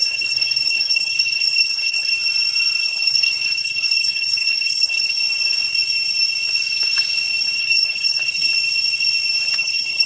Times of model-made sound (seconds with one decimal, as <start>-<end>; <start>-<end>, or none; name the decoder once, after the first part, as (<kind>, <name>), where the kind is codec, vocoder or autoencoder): 0.0-2.1 (codec, HILCodec); 2.8-5.2; 7.6-8.5; 9.6-10.1